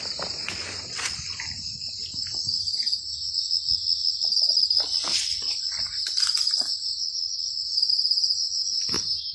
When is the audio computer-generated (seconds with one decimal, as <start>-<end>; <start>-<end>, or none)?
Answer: none